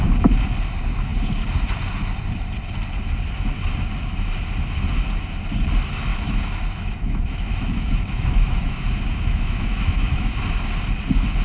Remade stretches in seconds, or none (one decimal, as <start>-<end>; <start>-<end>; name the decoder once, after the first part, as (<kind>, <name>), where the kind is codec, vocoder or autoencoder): 6.1-10.4 (autoencoder, DAC-VAE)